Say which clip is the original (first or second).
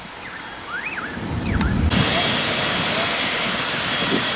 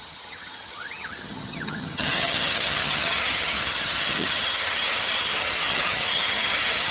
first